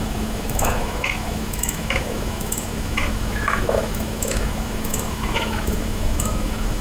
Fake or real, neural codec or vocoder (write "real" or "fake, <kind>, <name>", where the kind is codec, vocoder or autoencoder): fake, autoencoder, DAC-VAE